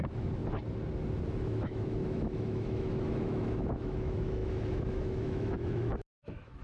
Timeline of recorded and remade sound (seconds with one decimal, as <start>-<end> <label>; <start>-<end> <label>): 0.0-0.4 remade; 0.4-1.4 recorded; 1.4-6.6 remade